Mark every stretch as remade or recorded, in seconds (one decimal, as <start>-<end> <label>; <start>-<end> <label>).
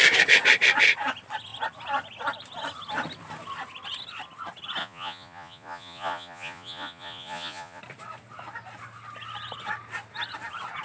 0.0-4.8 recorded; 4.8-7.8 remade; 7.8-10.8 recorded